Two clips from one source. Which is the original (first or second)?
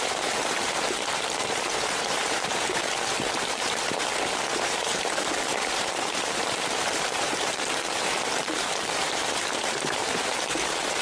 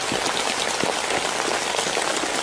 second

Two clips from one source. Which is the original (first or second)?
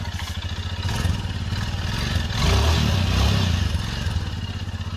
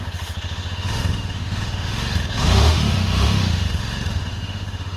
first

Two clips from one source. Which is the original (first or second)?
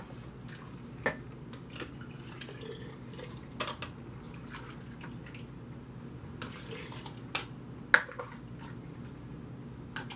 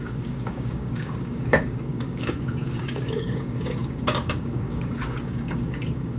first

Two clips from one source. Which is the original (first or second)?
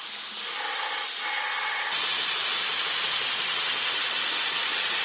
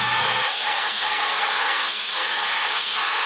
first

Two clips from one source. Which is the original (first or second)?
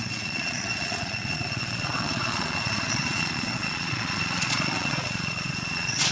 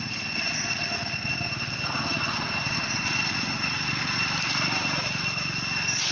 second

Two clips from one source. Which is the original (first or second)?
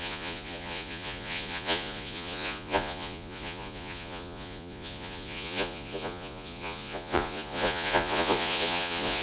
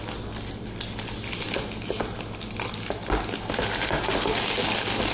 second